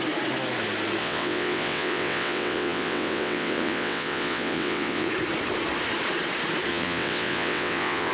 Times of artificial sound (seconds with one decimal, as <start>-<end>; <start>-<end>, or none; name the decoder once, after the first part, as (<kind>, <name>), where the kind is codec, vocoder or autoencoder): 1.0-5.1 (vocoder, WaveNeXt); 6.7-8.1